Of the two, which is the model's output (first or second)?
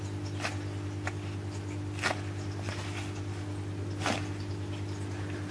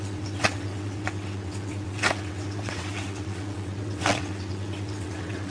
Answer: second